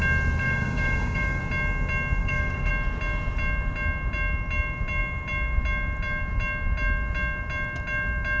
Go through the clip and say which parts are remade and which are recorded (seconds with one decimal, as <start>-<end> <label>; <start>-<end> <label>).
0.0-0.4 recorded; 0.4-1.4 remade; 1.4-2.2 recorded; 2.2-2.7 remade; 2.7-8.4 recorded